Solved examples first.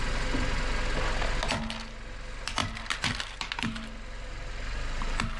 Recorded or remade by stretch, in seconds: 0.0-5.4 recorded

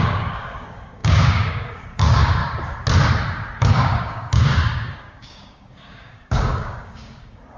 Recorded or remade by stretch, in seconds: 0.0-2.4 remade; 2.4-3.6 recorded; 3.6-7.6 remade